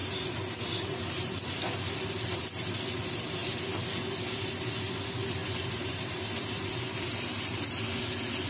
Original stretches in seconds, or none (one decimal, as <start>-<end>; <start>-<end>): 2.4-5.4; 8.0-8.5

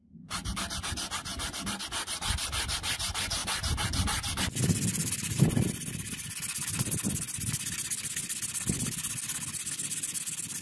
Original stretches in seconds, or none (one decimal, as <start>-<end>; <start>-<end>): 0.0-1.3; 1.8-3.4; 4.4-10.6

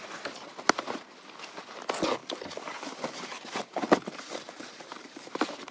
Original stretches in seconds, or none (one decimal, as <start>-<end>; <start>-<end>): 0.0-2.2

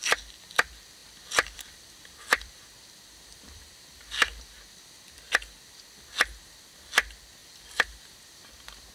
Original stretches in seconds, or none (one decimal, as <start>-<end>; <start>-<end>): 0.0-1.0; 4.6-7.4

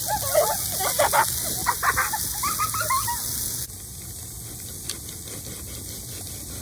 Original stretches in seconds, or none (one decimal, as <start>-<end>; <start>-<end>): 0.0-6.6

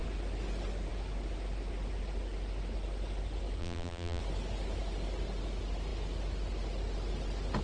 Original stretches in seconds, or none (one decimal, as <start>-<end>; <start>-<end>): 0.0-3.6; 4.2-7.6

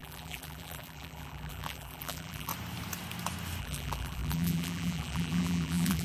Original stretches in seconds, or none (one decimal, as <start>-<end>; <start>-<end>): 2.5-3.6